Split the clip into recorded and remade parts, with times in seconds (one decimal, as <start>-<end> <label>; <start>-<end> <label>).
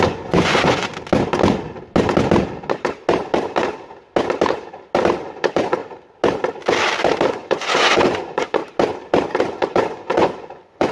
0.0-0.9 remade; 0.9-5.2 recorded; 5.2-5.8 remade; 5.8-7.3 recorded; 7.3-8.6 remade; 8.6-9.4 recorded; 9.4-10.9 remade